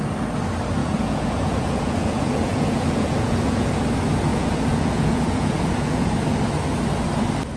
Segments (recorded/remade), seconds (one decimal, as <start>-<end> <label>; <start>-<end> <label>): 0.0-0.8 recorded; 0.8-3.8 remade; 3.8-4.3 recorded; 4.3-6.1 remade; 6.1-7.6 recorded